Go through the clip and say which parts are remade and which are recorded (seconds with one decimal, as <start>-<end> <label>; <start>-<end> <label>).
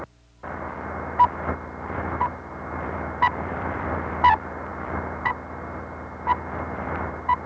0.0-7.5 recorded